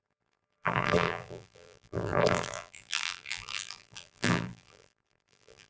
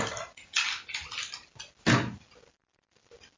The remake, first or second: first